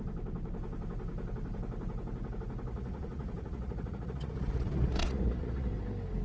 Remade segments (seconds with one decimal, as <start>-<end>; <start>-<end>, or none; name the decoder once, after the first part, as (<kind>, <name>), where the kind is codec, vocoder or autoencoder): 2.7-5.7 (vocoder, Vocos)